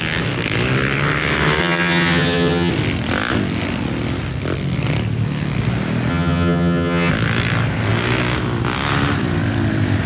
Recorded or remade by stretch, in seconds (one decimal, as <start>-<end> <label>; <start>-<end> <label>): 0.0-1.6 recorded; 1.6-2.7 remade; 2.7-6.1 recorded; 6.1-7.1 remade; 7.1-10.1 recorded